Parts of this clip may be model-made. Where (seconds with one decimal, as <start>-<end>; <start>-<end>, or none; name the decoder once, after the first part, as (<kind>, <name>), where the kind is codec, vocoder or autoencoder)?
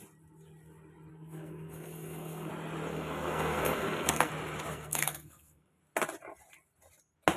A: 1.1-2.5 (codec, SNAC); 2.9-4.3; 4.7-5.8